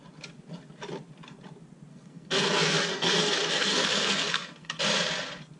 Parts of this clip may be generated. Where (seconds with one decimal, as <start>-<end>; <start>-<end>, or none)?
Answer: 1.9-4.8